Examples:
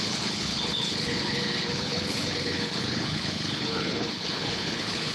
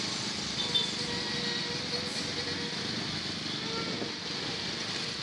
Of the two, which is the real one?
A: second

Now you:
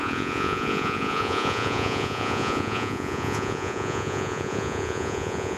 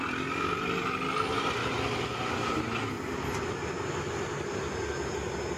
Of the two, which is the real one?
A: second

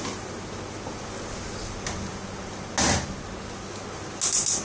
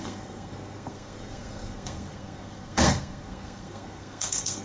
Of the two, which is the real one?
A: first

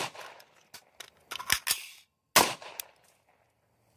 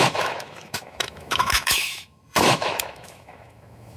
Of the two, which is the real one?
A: first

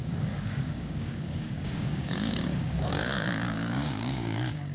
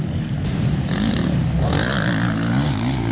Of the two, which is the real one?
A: second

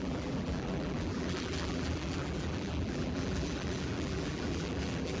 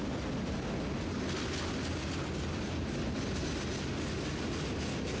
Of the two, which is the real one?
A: second